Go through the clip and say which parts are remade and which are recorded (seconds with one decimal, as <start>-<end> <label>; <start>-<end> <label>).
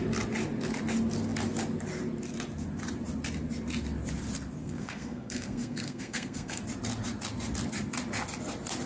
0.0-4.6 recorded; 4.6-6.6 remade; 6.6-8.9 recorded